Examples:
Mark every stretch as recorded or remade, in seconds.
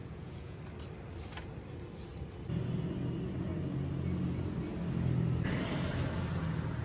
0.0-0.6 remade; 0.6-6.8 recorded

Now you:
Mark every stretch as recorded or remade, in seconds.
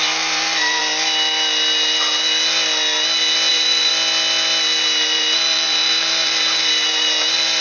0.0-0.8 remade; 0.8-3.5 recorded; 3.5-3.9 remade; 3.9-4.8 recorded; 4.8-7.6 remade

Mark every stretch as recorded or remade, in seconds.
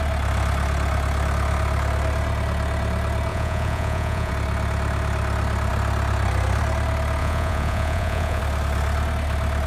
0.0-3.3 recorded; 3.3-4.3 remade; 4.3-7.2 recorded; 7.2-8.4 remade; 8.4-9.7 recorded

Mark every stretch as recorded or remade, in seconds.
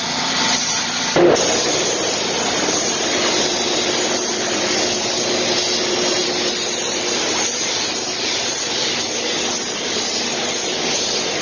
0.0-11.4 recorded